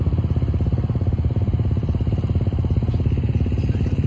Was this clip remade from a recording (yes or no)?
no